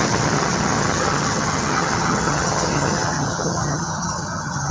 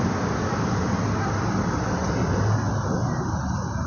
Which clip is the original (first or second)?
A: second